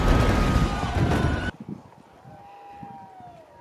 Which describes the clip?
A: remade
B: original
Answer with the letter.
B